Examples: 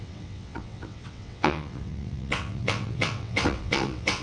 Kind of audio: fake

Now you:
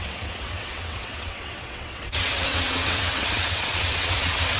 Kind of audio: fake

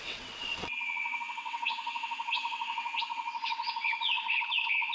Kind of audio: fake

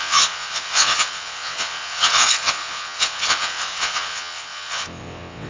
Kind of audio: fake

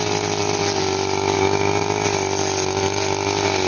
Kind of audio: real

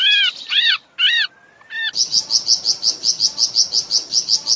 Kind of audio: real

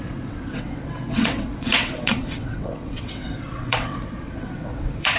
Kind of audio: fake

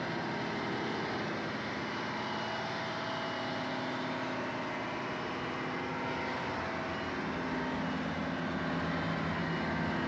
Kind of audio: real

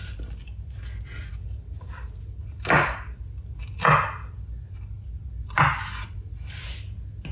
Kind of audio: real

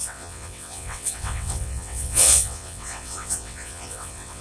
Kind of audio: fake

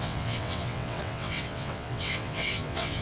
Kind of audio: fake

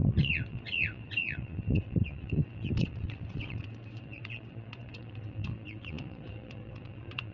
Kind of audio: fake